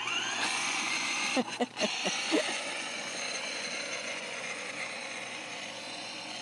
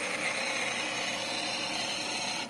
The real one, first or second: second